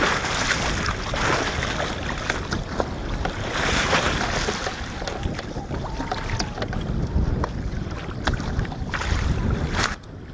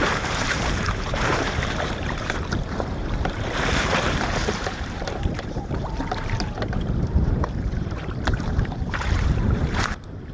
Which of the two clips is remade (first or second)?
second